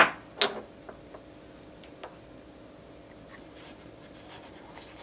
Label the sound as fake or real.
real